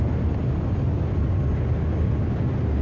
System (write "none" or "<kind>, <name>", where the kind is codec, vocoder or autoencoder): none